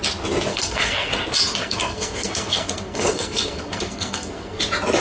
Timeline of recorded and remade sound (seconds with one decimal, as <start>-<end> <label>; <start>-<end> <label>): 0.0-0.5 recorded; 0.5-1.1 remade; 1.1-1.6 recorded; 1.6-4.6 remade; 4.6-5.0 recorded